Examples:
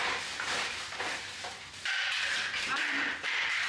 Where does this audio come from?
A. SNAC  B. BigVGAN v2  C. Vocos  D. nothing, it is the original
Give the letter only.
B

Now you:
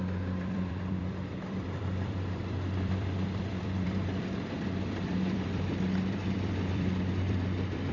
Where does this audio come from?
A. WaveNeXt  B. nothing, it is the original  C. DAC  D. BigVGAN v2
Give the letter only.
D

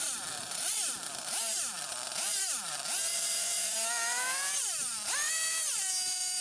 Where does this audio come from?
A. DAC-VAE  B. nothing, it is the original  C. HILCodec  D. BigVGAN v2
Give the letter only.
D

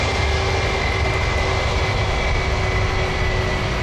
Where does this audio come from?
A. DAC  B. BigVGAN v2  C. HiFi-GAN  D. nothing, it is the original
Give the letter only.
D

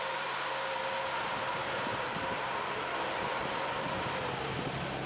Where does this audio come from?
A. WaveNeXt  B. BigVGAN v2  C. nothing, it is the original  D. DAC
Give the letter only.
B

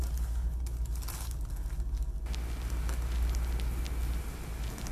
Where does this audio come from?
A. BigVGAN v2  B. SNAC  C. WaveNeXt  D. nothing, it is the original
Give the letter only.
D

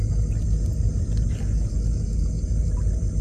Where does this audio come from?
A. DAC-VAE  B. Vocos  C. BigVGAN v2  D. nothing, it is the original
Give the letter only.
D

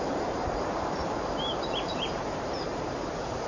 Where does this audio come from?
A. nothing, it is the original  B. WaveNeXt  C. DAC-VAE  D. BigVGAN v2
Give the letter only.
D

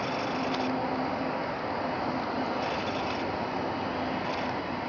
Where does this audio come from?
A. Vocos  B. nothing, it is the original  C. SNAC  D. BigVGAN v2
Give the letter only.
B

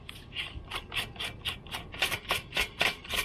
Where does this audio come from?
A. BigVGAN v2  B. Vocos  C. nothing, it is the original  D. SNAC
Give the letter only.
A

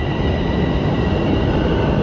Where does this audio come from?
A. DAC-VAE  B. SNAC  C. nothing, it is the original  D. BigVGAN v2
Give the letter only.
D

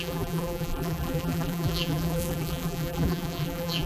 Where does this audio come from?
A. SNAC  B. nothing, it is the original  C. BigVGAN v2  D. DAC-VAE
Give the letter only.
C